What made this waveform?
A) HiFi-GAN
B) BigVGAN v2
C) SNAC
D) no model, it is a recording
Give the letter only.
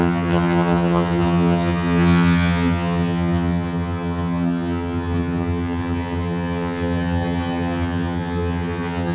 A